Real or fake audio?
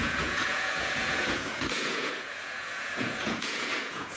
fake